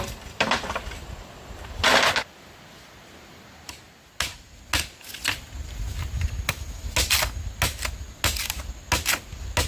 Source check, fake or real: real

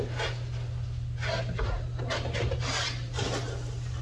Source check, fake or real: real